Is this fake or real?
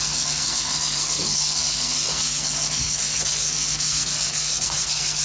fake